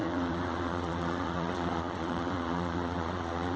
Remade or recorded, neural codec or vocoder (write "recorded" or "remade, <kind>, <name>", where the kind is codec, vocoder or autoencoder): remade, vocoder, Vocos